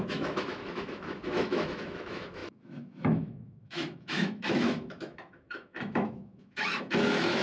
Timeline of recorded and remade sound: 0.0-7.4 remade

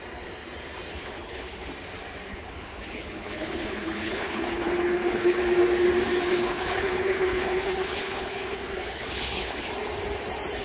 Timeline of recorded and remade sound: 0.0-0.9 recorded; 0.9-1.7 remade; 1.7-2.3 recorded; 2.3-5.4 remade; 5.4-6.3 recorded; 6.3-9.7 remade; 9.7-10.6 recorded

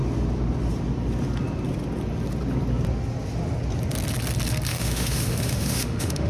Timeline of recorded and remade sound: 0.0-4.7 recorded; 4.7-6.3 remade

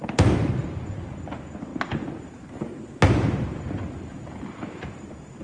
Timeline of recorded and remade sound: 0.0-4.1 recorded; 4.1-5.4 remade

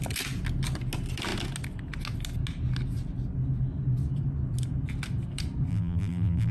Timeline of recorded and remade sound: 0.0-5.7 recorded; 5.7-6.5 remade

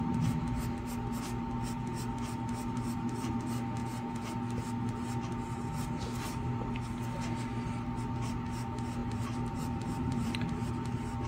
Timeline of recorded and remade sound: 0.0-3.8 recorded; 3.8-4.3 remade; 4.3-11.3 recorded

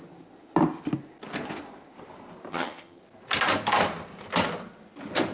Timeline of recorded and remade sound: 0.0-2.5 recorded; 2.5-3.0 remade; 3.0-5.3 recorded

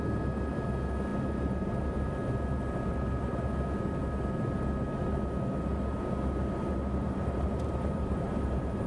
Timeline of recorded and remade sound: 0.0-7.0 recorded; 7.0-8.9 remade